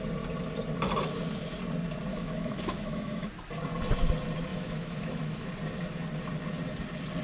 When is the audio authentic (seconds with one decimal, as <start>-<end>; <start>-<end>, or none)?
0.0-2.1; 3.3-4.5; 5.5-7.2